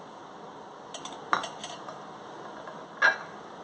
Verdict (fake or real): real